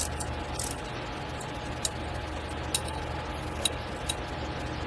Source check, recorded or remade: recorded